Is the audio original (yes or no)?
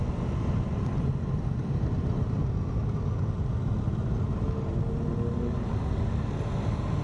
yes